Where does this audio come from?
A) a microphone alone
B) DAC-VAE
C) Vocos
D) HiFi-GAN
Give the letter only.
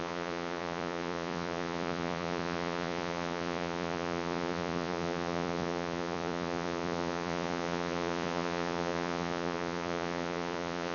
C